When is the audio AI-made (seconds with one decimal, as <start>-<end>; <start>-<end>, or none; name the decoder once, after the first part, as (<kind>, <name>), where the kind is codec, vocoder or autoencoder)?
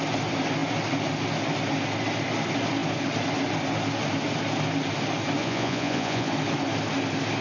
5.4-6.3 (vocoder, Vocos)